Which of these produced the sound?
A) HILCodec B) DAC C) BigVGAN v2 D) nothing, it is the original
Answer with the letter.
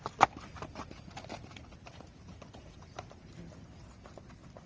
D